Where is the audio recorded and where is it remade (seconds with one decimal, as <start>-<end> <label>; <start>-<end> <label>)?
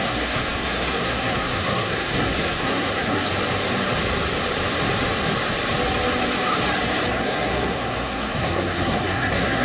0.0-3.3 remade; 3.3-7.2 recorded; 7.2-9.6 remade